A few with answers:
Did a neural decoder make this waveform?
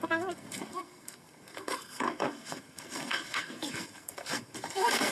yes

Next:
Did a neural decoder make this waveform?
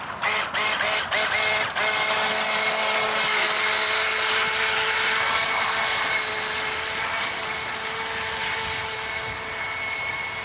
no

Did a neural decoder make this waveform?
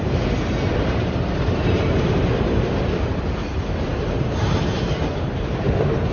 yes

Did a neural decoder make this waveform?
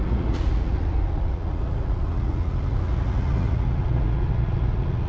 yes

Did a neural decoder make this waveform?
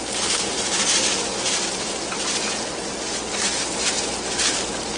no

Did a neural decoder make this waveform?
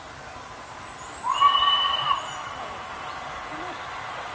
no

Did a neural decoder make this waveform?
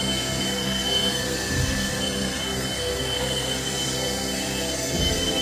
yes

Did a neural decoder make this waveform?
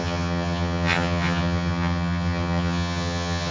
yes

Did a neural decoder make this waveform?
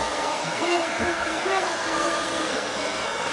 yes